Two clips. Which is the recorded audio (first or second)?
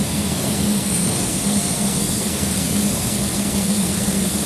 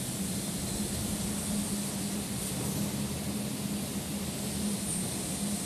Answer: second